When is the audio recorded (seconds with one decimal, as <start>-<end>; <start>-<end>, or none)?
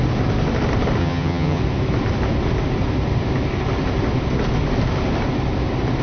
0.0-1.0; 1.6-6.0